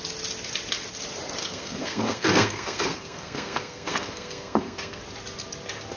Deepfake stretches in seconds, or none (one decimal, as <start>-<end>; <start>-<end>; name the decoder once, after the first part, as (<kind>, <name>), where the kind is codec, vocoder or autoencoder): 1.4-5.0 (codec, SNAC)